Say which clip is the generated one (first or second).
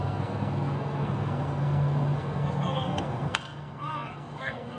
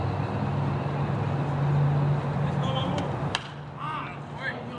first